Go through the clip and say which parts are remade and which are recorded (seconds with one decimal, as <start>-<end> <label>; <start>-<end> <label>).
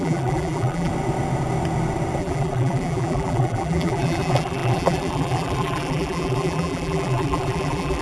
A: 0.0-0.9 remade; 0.9-2.2 recorded; 2.2-8.0 remade